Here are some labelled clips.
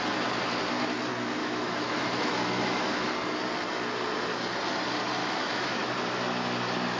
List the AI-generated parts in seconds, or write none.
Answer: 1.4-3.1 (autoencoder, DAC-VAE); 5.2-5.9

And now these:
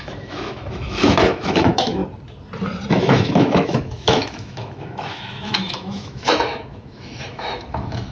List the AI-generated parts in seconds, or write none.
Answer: 0.0-2.0 (autoencoder, DAC-VAE); 2.9-8.1